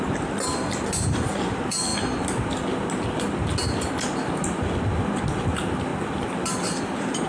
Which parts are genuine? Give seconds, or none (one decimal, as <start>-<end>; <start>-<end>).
0.0-7.3